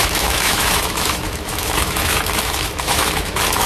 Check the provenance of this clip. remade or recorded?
remade